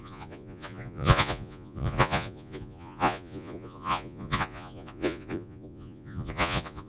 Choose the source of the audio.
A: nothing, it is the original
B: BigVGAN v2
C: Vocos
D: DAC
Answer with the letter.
C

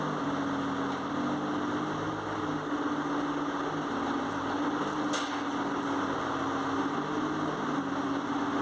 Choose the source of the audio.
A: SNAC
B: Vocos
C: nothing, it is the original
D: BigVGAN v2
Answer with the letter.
C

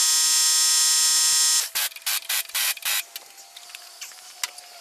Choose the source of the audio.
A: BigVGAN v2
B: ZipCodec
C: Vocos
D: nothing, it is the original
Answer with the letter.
D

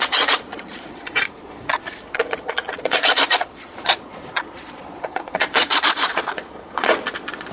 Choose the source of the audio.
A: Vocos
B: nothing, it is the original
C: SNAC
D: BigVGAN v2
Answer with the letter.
A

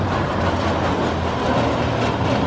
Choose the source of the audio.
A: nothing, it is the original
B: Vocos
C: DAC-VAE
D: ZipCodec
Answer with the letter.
A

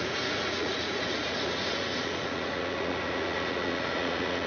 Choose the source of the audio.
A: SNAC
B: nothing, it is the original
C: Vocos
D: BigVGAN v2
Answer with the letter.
C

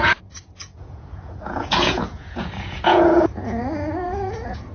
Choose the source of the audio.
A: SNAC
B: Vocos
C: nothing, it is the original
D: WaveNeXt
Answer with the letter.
B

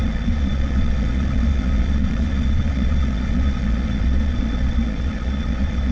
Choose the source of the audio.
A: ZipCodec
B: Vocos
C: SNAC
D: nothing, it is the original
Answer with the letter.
B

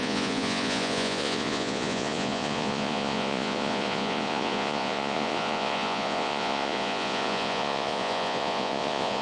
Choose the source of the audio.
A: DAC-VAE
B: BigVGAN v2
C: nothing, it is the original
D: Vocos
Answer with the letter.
D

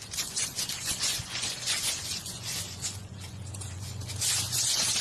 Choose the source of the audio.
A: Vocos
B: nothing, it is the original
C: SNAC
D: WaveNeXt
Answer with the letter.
A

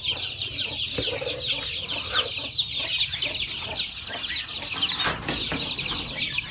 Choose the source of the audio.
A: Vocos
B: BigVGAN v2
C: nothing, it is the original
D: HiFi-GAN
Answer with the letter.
C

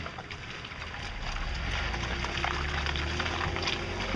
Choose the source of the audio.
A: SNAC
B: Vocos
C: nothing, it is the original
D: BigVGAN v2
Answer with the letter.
C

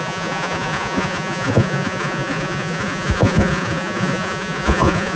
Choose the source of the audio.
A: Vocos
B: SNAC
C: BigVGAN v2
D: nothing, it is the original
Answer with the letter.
A